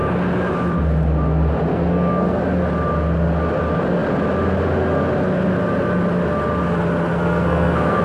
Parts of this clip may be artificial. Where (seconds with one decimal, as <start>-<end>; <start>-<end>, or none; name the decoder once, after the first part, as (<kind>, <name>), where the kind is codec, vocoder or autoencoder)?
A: 1.7-2.4 (codec, SNAC); 7.1-8.0